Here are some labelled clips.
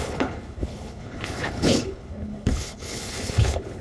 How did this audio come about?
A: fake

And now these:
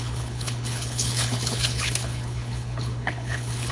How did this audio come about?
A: fake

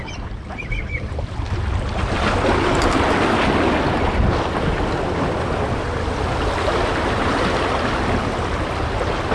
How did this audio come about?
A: real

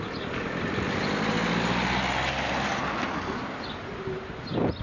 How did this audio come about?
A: real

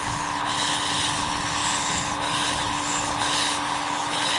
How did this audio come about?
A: fake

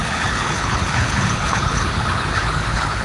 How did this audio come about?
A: fake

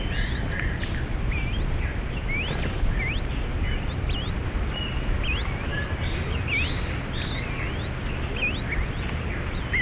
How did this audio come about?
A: real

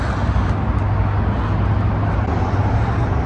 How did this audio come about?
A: real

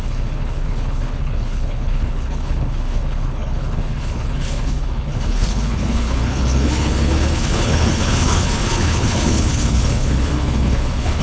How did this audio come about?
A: fake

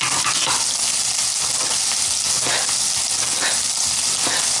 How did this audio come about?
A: real